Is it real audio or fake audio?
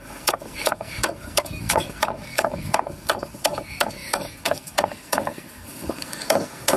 fake